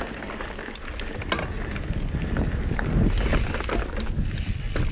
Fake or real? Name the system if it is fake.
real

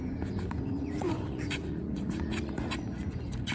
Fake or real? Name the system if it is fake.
fake, vocoder, Vocos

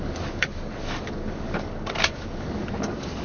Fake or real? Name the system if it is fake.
fake, codec, DAC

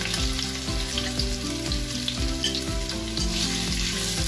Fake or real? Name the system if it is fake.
real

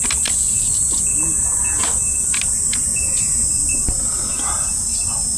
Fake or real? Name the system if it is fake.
real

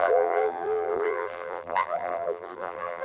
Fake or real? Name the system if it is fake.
fake, vocoder, BigVGAN v2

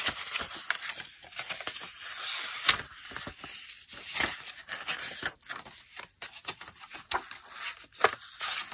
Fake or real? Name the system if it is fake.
real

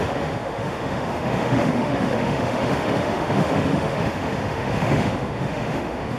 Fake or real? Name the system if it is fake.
fake, autoencoder, DAC-VAE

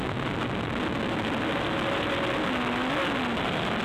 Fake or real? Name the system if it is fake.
real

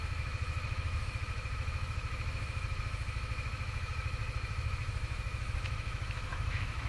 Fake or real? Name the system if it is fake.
fake, autoencoder, DAC-VAE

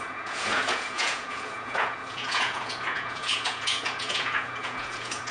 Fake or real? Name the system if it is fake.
fake, vocoder, Vocos